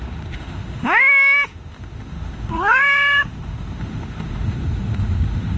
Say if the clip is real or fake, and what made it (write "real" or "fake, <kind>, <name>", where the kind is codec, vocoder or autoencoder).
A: fake, autoencoder, DAC-VAE